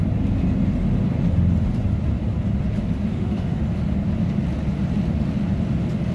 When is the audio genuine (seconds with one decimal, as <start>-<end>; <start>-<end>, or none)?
0.0-3.1; 3.6-6.1